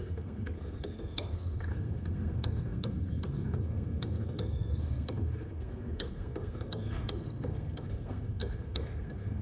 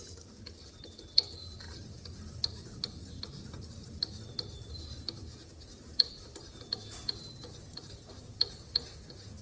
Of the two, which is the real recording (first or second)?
second